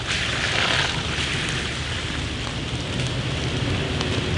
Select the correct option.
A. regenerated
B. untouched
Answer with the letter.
B